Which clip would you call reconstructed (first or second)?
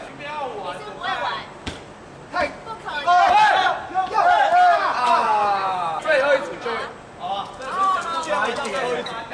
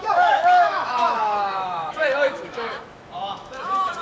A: second